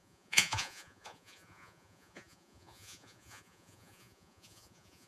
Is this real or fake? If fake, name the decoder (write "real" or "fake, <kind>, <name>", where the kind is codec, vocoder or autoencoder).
fake, vocoder, Vocos